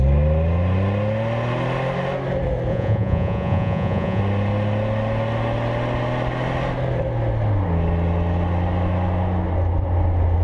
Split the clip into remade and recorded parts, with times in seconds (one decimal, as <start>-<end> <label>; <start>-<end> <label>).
0.0-2.7 recorded; 2.7-4.2 remade; 4.2-10.4 recorded